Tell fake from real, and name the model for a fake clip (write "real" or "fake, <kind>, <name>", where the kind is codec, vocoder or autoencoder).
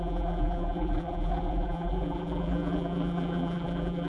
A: fake, vocoder, BigVGAN v2